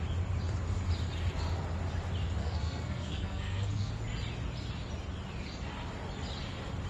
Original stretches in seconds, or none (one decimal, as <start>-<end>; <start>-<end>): 0.0-2.4; 3.9-6.9